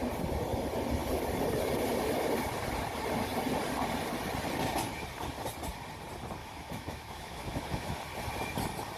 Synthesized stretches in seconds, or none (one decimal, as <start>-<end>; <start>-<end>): 6.4-8.0